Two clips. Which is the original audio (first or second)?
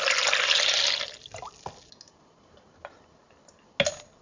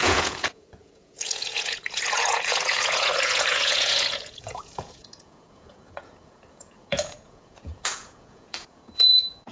first